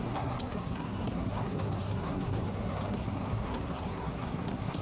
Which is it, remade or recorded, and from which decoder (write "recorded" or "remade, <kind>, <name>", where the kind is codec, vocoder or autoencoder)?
remade, codec, SNAC